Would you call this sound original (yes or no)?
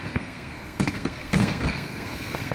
no